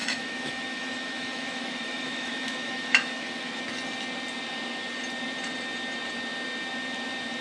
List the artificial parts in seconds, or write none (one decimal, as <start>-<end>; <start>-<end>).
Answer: 0.0-3.6